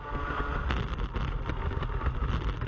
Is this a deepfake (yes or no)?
no